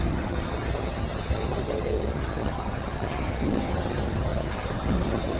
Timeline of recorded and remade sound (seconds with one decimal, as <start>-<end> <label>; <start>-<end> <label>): 0.0-5.4 remade